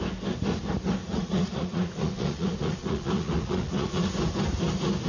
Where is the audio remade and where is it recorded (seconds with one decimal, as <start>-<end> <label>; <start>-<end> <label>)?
0.0-1.0 recorded; 1.0-4.1 remade; 4.1-5.1 recorded